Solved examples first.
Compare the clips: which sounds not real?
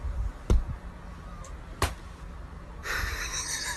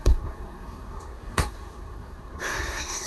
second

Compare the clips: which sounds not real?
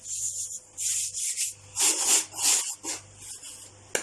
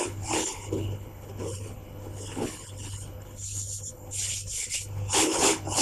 second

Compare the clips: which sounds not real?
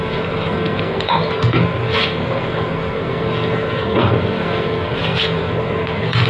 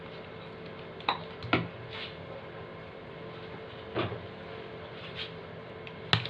first